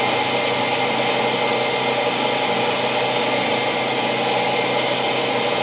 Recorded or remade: recorded